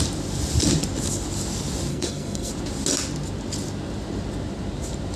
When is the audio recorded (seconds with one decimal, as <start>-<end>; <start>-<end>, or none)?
0.0-1.9; 2.5-5.2